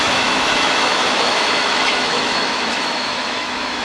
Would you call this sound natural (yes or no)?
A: no